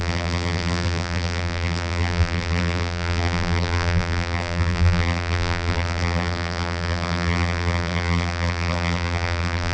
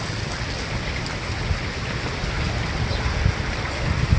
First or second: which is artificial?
first